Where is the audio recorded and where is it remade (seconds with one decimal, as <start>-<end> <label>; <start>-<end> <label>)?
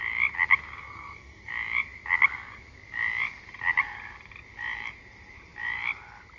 0.0-0.8 recorded; 0.8-1.5 remade; 1.5-6.4 recorded